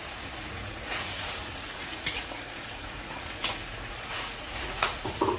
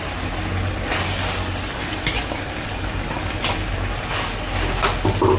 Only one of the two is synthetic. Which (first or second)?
first